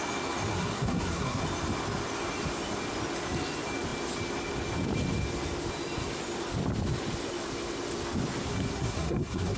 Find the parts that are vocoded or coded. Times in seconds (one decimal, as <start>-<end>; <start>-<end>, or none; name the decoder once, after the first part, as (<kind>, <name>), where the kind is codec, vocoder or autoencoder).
0.5-1.4 (codec, SNAC); 8.5-9.6